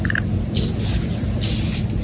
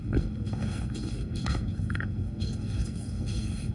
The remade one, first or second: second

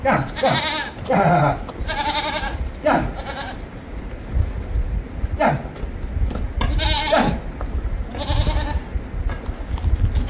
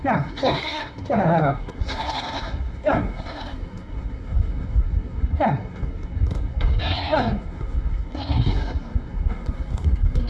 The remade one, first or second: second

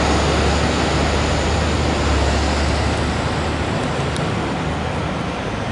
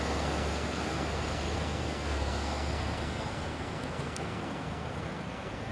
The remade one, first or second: second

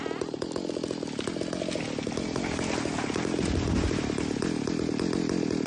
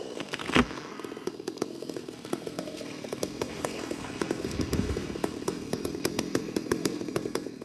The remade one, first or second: second